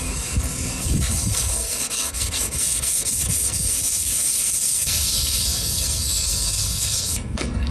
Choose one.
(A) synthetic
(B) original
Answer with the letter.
A